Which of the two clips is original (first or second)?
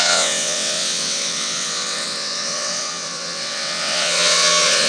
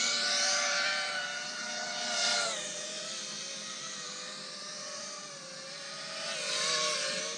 second